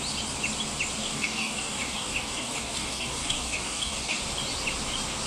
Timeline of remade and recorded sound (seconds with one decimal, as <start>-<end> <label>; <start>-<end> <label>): 0.0-1.0 recorded; 1.0-4.2 remade; 4.2-5.3 recorded